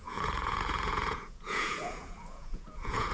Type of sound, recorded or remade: remade